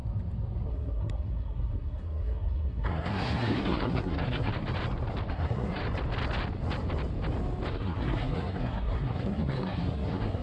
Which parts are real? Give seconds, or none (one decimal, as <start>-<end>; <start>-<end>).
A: 0.0-0.7; 4.5-5.3; 5.8-7.7